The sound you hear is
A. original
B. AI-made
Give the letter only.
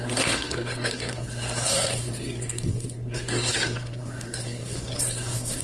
B